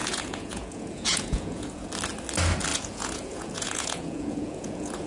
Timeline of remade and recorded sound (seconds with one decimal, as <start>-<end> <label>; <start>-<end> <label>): 0.0-1.9 remade; 1.9-2.7 recorded; 2.7-5.1 remade

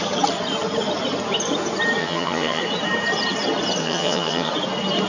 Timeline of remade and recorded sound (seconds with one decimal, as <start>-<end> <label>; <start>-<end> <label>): 0.0-2.0 recorded; 2.0-2.6 remade; 2.6-3.8 recorded; 3.8-4.5 remade; 4.5-5.1 recorded

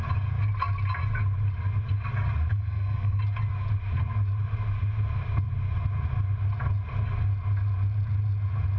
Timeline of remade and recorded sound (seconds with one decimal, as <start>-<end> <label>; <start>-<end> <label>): 0.0-2.5 recorded; 2.5-3.2 remade; 3.2-8.8 recorded

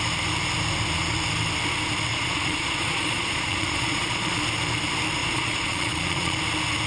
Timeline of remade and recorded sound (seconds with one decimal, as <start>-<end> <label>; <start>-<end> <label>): 0.0-2.1 recorded; 2.1-4.4 remade; 4.4-5.2 recorded; 5.2-6.4 remade; 6.4-6.9 recorded

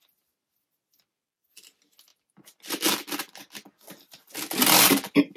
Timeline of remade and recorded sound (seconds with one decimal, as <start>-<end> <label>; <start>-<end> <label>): 0.0-5.4 recorded

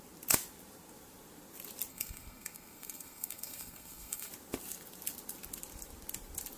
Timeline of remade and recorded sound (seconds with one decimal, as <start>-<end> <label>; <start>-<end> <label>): 0.0-1.9 recorded; 1.9-4.3 remade; 4.3-6.6 recorded

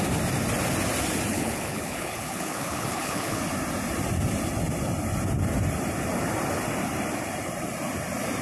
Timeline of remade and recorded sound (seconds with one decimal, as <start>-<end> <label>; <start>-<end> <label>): 0.0-1.3 recorded; 1.3-3.4 remade; 3.4-8.4 recorded

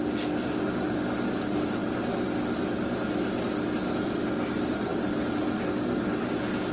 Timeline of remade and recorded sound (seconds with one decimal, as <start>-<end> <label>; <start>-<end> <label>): 0.0-4.9 recorded; 4.9-5.6 remade; 5.6-6.7 recorded